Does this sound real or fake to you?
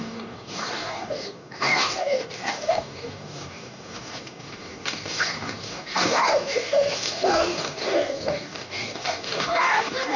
fake